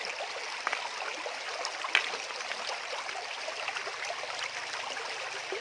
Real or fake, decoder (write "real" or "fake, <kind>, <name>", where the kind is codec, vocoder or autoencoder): real